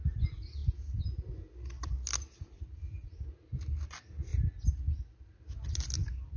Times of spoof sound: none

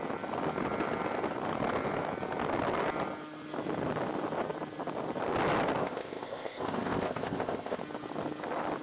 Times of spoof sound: 5.8-7.8 (codec, ZipCodec)

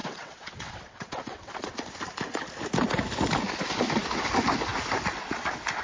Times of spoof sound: 0.0-1.7 (vocoder, WaveNeXt)

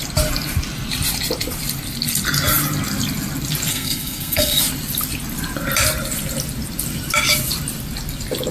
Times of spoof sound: 3.7-4.6 (codec, SNAC)

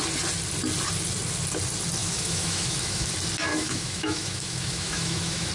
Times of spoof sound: 2.0-3.1 (autoencoder, DAC-VAE); 3.5-5.5

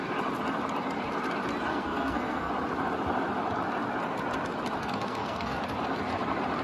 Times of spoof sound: 1.7-2.5 (codec, SNAC); 4.8-5.6

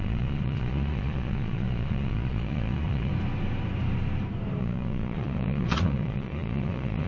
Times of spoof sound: 0.0-3.1 (vocoder, Vocos); 4.6-7.1